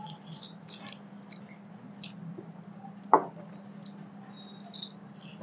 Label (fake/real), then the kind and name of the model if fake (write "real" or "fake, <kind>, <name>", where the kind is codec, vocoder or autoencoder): real